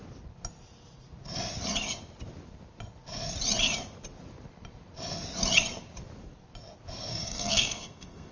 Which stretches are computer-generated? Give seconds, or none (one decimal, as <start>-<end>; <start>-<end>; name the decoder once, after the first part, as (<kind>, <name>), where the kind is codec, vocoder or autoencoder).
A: 7.1-8.3 (codec, SNAC)